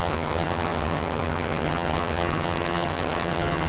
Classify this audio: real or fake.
fake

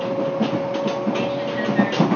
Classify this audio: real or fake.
real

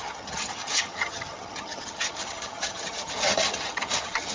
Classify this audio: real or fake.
fake